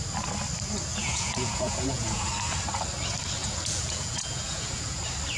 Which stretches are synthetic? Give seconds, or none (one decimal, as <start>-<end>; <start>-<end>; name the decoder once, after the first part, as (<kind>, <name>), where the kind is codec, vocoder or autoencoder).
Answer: 0.9-2.2 (vocoder, Vocos); 3.4-5.0